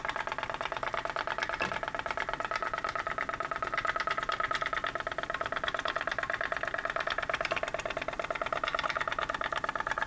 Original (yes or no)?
yes